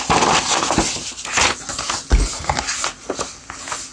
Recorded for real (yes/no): yes